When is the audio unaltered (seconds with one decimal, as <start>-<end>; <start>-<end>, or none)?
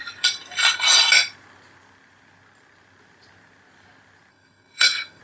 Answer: 0.0-4.3